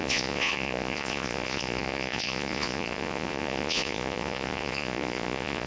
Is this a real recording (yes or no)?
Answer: no